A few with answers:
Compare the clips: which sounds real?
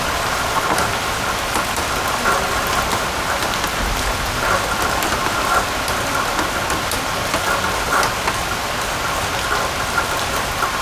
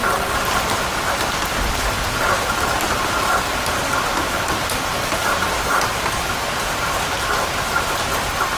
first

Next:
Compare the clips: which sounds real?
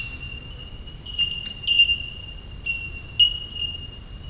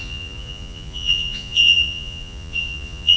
first